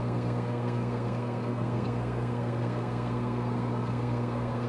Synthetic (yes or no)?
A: yes